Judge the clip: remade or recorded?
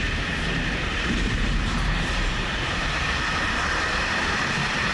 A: remade